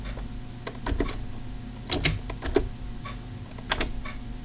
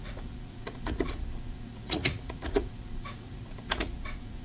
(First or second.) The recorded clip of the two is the first